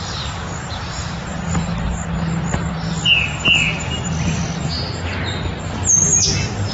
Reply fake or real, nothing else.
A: real